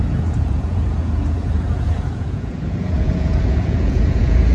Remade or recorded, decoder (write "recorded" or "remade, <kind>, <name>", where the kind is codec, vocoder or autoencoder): remade, vocoder, Vocos